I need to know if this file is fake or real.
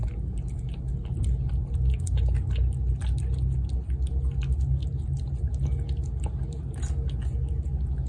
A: real